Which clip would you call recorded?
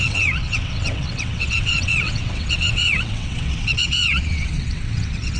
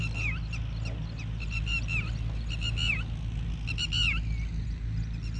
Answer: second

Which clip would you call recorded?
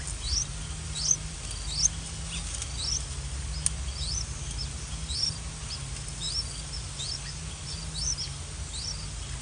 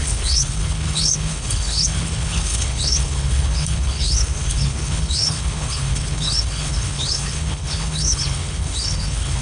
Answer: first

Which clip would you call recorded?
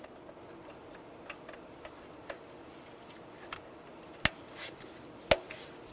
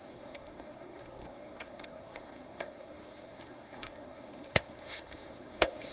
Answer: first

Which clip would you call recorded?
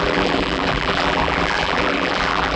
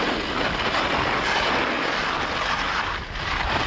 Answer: second